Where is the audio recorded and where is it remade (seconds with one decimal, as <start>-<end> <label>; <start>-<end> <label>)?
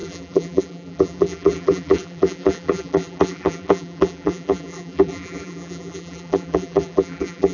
0.0-7.5 remade